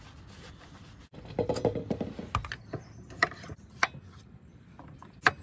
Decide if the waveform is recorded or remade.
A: recorded